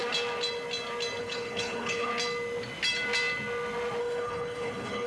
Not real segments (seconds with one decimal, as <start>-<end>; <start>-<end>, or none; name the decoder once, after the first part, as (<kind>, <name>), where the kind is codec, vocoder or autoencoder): 1.2-2.1 (codec, HILCodec); 4.0-5.1